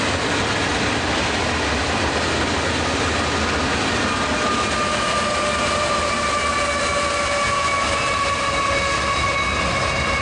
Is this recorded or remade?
recorded